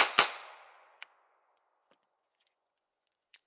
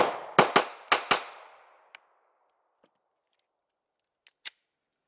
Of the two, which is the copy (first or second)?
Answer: first